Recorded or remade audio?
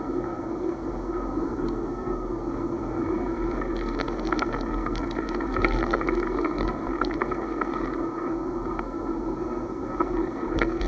remade